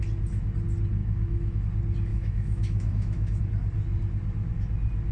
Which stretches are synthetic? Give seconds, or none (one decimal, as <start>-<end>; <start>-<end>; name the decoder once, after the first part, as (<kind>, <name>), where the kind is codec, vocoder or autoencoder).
1.0-1.6 (autoencoder, DAC-VAE); 2.1-3.4